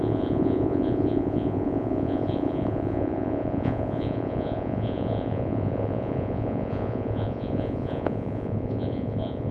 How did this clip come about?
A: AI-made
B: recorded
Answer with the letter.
A